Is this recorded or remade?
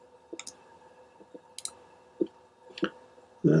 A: recorded